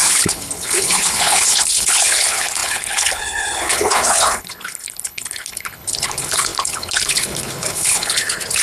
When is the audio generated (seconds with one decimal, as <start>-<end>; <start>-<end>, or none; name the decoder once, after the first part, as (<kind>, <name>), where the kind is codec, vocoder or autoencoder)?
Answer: 0.0-8.6 (codec, HILCodec)